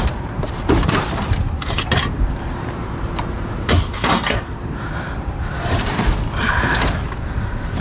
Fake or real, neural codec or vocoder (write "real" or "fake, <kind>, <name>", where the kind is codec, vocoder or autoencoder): fake, vocoder, BigVGAN v2